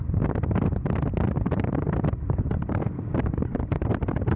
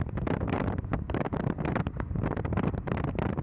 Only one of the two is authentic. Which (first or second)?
first